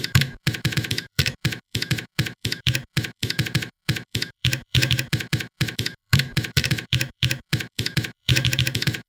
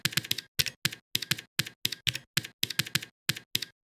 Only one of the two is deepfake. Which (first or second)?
first